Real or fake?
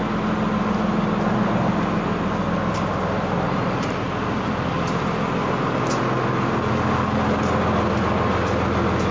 real